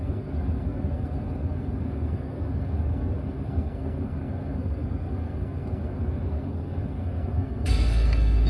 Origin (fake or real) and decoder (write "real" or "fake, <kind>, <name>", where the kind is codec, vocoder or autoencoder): fake, codec, SNAC